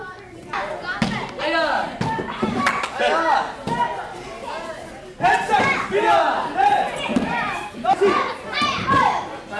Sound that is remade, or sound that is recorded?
recorded